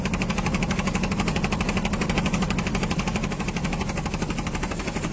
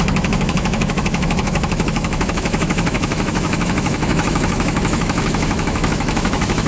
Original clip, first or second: first